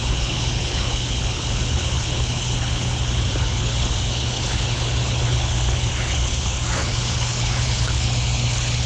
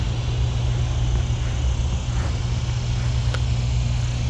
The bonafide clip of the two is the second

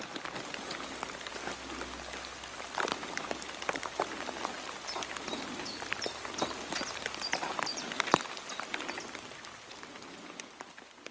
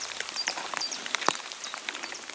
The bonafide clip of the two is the first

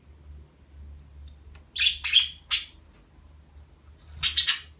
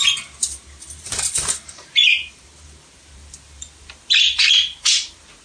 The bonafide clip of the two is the first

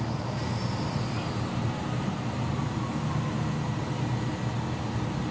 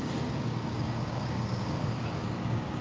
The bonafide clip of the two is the first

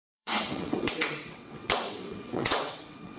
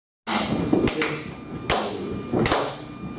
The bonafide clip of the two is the second